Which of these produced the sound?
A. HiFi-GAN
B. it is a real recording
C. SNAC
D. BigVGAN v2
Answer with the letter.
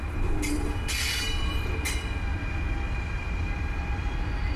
B